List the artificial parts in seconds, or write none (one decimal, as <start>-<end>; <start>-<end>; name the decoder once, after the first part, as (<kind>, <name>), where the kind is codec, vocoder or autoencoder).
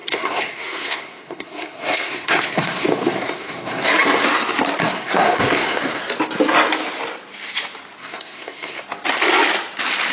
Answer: 0.0-3.8 (codec, SNAC); 4.8-6.0; 8.0-8.8